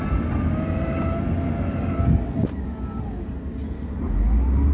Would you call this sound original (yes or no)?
yes